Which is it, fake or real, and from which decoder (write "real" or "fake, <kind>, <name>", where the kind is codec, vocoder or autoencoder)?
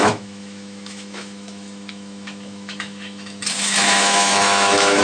fake, autoencoder, DAC-VAE